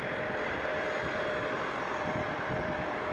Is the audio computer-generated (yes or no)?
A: yes